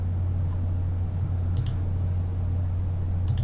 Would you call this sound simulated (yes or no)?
no